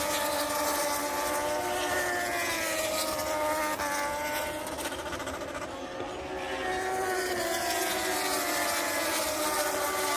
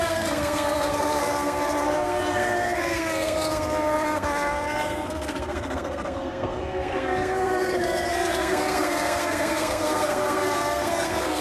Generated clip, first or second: second